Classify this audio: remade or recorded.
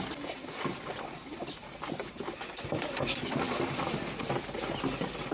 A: recorded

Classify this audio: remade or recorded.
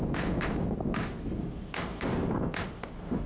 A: recorded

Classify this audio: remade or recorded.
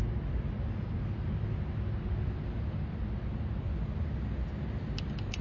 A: recorded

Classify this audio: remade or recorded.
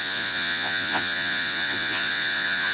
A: remade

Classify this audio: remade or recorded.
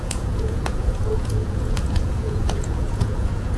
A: remade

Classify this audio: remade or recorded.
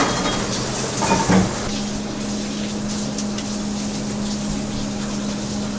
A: recorded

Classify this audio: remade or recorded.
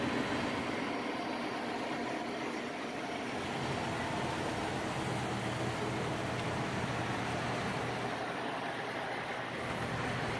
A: recorded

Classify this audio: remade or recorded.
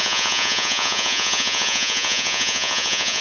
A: remade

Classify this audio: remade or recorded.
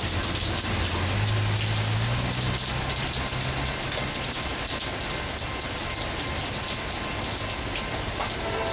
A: recorded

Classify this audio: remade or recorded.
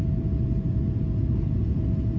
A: remade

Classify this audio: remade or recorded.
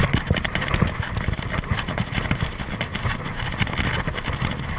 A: recorded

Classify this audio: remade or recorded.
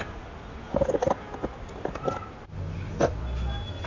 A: recorded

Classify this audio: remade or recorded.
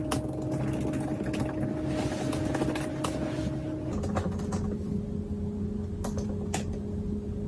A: recorded